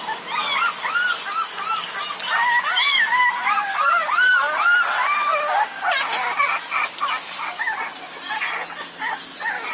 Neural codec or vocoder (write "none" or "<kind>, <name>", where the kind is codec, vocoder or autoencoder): none